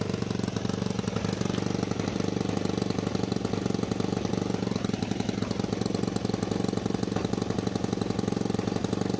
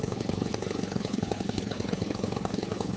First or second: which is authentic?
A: first